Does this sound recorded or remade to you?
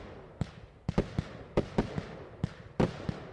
recorded